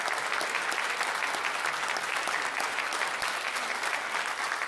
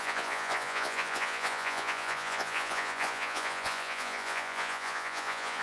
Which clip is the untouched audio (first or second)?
first